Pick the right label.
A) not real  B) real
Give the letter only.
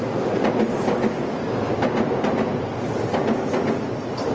B